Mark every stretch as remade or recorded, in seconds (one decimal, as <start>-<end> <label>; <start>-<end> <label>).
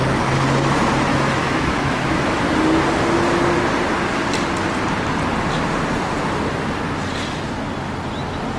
0.0-1.1 recorded; 1.1-2.4 remade; 2.4-8.6 recorded